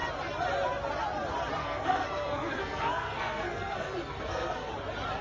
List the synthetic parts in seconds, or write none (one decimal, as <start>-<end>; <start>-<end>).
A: 1.6-4.7